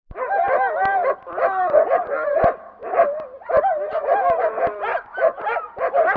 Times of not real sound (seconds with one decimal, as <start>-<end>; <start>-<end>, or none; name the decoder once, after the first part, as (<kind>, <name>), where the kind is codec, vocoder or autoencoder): 4.9-5.4 (vocoder, BigVGAN v2)